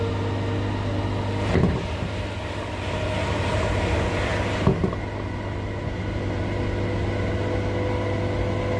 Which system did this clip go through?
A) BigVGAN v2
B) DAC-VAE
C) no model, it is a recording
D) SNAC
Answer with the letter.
C